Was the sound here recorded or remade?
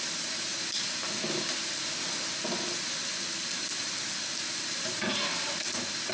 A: recorded